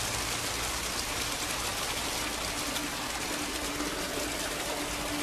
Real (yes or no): yes